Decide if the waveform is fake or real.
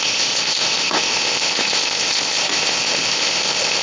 fake